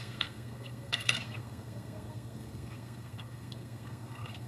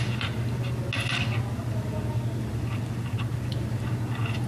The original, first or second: second